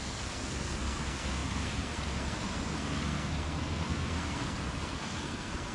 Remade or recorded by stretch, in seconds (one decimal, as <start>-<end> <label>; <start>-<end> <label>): 0.0-5.7 remade

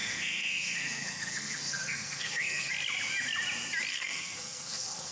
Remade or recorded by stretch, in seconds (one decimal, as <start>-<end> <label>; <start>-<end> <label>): 0.0-2.7 remade; 2.7-3.9 recorded; 3.9-5.1 remade